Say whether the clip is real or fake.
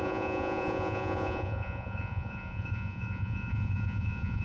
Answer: fake